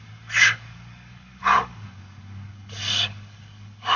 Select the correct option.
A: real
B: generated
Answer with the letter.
B